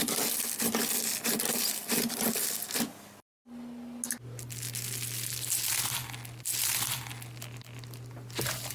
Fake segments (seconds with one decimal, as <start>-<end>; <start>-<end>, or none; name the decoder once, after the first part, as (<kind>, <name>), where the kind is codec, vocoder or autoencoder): none